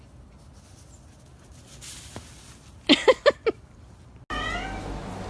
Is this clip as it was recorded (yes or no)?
yes